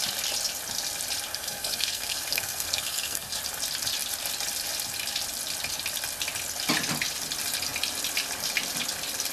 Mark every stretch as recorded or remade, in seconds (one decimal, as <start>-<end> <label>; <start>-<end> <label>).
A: 0.0-1.3 recorded; 1.3-3.4 remade; 3.4-9.3 recorded